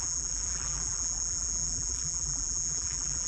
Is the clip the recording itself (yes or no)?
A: no